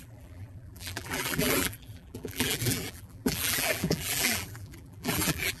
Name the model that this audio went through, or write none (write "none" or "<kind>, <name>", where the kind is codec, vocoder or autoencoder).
vocoder, BigVGAN v2